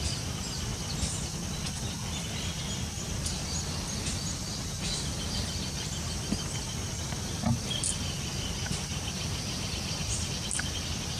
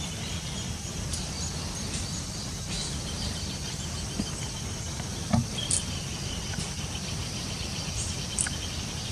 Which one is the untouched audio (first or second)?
first